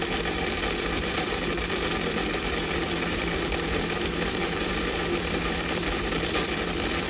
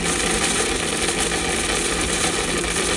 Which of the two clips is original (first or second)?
second